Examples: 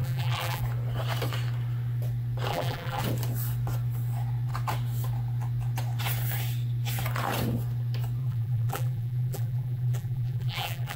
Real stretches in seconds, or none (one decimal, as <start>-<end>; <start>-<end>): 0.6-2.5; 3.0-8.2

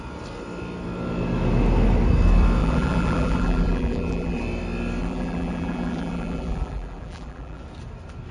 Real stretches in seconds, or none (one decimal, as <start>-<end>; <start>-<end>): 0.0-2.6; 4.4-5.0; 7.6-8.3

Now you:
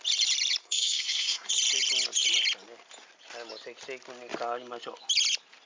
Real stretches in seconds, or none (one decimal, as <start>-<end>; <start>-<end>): 0.0-0.6; 1.5-5.7

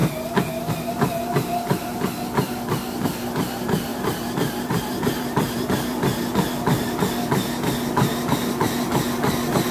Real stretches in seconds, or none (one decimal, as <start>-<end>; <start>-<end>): 0.0-3.9; 6.5-9.7

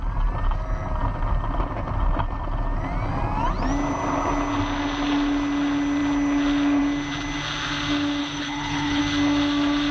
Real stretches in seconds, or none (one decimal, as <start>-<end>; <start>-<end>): 0.0-8.2; 9.0-9.9

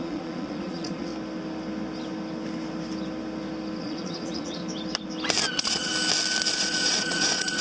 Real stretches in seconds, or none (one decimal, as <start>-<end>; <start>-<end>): 1.1-3.8; 4.6-5.5; 5.9-6.5